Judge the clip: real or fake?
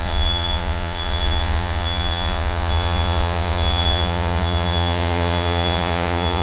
fake